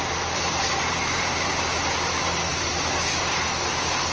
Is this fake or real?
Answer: real